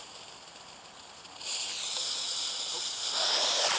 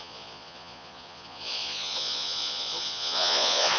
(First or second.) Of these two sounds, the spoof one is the second